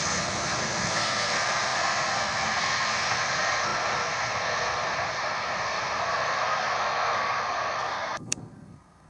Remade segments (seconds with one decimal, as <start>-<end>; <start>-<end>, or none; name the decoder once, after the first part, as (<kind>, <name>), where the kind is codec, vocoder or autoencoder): 0.0-9.1 (codec, SNAC)